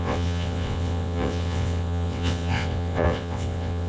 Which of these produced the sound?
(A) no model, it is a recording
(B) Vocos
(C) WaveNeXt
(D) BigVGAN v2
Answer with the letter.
C